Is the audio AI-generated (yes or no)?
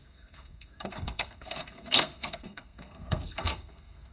yes